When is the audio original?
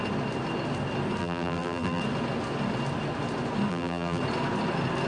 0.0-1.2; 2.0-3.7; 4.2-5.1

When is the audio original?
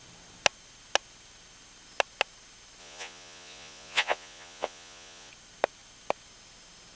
0.0-2.8; 5.3-7.0